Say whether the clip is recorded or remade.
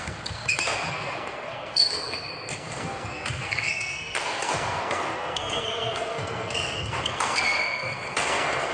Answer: remade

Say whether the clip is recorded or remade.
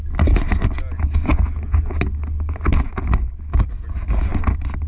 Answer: recorded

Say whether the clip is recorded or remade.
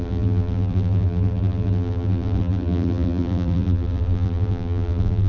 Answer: remade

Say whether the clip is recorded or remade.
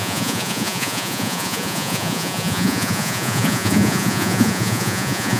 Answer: remade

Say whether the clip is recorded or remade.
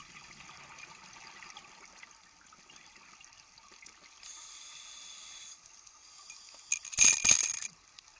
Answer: recorded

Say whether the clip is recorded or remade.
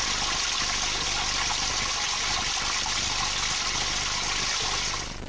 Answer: recorded